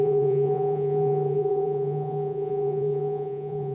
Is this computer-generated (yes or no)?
yes